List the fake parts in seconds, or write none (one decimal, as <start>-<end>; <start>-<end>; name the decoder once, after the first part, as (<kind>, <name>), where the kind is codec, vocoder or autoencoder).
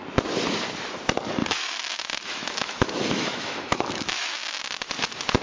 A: 1.4-4.6 (autoencoder, DAC-VAE)